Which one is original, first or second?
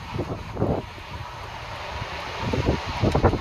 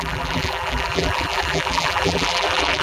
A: first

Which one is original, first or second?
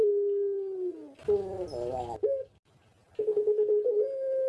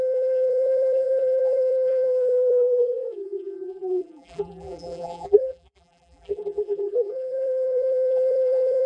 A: first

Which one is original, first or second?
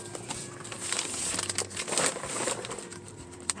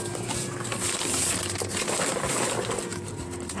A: second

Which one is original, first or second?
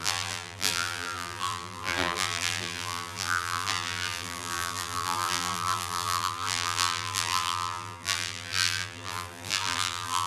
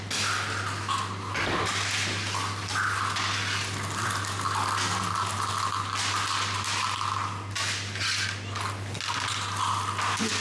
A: second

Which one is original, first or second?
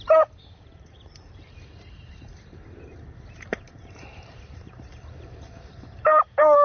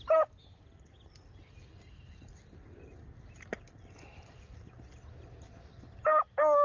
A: second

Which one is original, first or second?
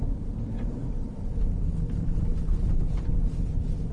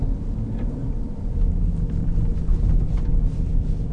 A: second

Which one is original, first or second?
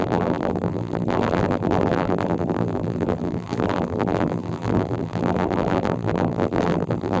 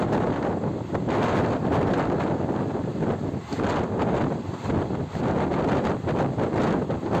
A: second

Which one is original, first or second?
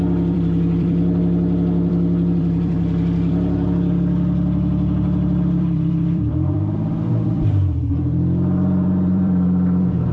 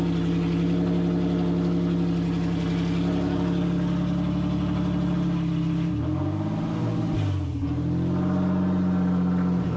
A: second